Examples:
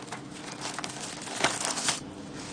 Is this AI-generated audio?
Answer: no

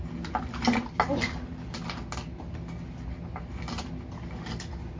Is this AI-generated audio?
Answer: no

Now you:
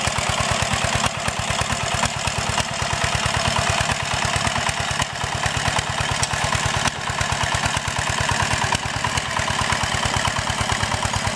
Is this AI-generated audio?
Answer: no